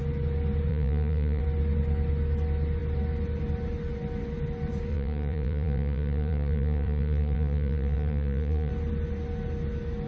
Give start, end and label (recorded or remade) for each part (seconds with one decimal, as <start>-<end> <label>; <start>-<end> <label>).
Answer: 0.0-0.7 recorded; 0.7-1.4 remade; 1.4-4.9 recorded; 4.9-8.7 remade; 8.7-10.1 recorded